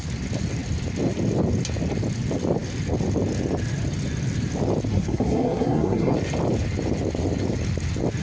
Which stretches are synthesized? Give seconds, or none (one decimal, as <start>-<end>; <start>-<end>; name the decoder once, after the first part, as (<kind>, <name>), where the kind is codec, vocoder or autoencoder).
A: 4.9-6.1 (codec, SNAC)

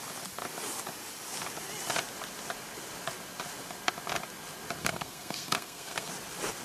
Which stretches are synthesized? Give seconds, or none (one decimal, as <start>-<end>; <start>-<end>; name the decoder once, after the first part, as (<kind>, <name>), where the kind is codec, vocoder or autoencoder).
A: 4.8-6.1 (codec, SNAC)

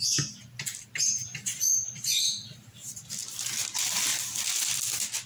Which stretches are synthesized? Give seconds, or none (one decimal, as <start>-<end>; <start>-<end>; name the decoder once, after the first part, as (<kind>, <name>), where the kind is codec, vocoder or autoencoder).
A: 1.2-2.9 (vocoder, BigVGAN v2)

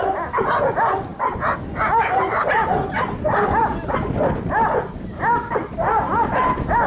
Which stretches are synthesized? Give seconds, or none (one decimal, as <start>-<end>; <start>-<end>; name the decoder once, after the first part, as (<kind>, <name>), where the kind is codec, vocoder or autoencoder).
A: none

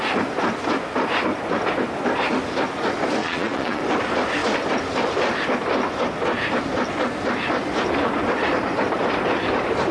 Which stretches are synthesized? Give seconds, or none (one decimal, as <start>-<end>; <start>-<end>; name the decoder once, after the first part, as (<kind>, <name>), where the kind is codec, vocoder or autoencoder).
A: 3.2-3.8 (vocoder, Vocos)

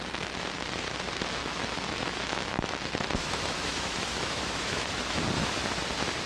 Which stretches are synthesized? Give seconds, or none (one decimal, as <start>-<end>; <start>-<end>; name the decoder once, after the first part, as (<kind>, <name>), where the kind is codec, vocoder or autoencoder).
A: 1.4-4.9 (autoencoder, DAC-VAE)